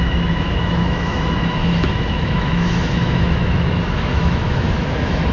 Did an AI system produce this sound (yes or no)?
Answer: yes